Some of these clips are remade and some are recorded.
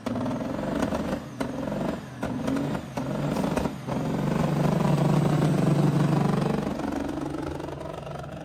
recorded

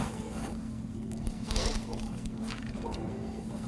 remade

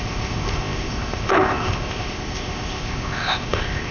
remade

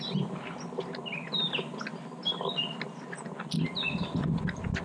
recorded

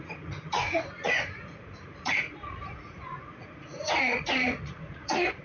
remade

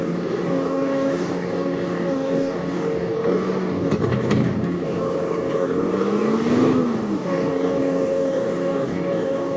remade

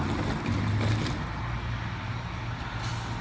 recorded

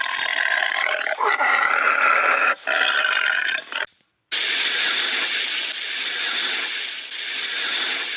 recorded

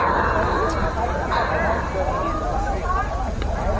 recorded